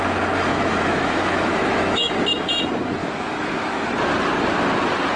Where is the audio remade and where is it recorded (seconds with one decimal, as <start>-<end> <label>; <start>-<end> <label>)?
0.0-0.5 recorded; 0.5-2.1 remade; 2.1-3.0 recorded; 3.0-3.9 remade; 3.9-5.2 recorded